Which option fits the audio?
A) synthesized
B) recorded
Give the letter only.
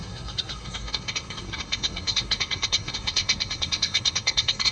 A